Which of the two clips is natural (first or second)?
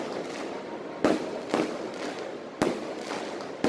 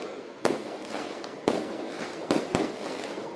first